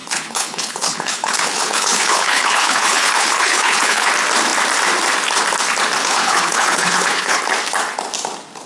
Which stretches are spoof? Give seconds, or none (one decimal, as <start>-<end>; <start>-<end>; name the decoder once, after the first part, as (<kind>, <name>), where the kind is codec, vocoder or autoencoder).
0.0-4.1 (codec, HILCodec); 6.0-7.4